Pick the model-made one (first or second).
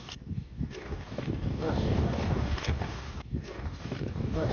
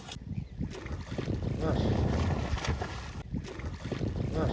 first